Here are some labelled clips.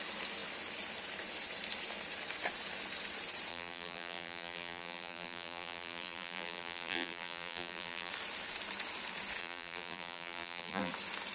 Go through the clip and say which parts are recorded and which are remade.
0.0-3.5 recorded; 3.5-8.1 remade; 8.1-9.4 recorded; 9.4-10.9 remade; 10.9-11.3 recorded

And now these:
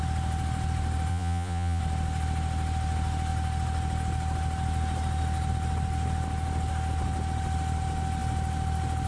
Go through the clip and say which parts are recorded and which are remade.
0.0-1.1 recorded; 1.1-1.8 remade; 1.8-9.1 recorded

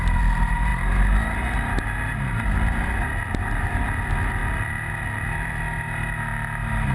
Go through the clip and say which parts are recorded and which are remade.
0.0-6.9 recorded

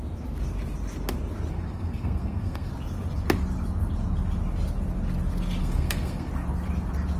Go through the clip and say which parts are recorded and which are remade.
0.0-1.5 recorded; 1.5-2.7 remade; 2.7-5.6 recorded; 5.6-6.3 remade; 6.3-7.2 recorded

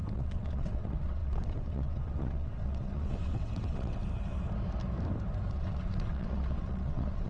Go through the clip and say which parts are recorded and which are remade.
0.0-4.0 remade; 4.0-5.5 recorded; 5.5-7.3 remade

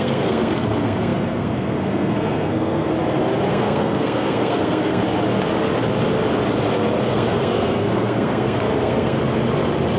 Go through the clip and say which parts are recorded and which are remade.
0.0-2.9 remade; 2.9-3.5 recorded; 3.5-5.0 remade; 5.0-7.0 recorded; 7.0-9.2 remade; 9.2-10.0 recorded